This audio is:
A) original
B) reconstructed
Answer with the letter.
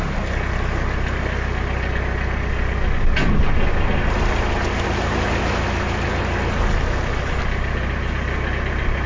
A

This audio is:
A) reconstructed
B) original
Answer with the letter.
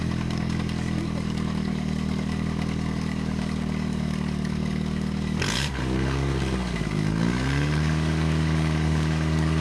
A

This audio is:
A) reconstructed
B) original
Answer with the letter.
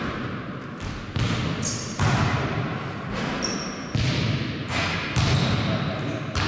B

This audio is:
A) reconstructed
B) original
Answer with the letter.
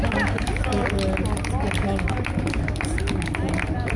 B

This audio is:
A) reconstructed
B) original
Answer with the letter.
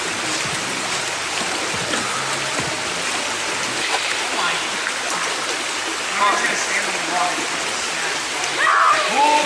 B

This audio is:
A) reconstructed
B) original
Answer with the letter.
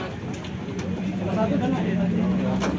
B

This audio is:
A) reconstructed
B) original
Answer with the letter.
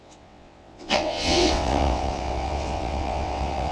A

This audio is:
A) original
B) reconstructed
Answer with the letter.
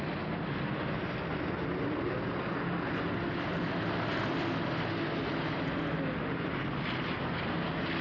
A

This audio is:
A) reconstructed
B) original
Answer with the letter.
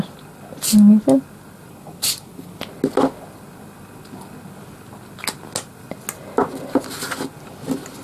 B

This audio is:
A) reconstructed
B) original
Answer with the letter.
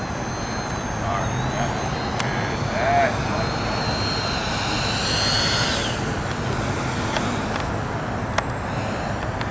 B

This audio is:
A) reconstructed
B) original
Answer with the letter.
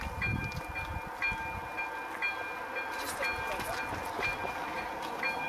B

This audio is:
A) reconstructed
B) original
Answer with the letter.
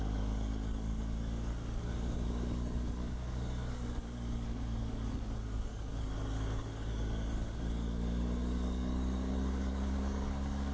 A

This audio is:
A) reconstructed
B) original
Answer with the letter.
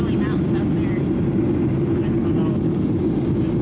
B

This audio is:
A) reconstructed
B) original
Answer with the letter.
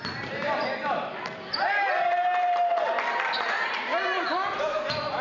B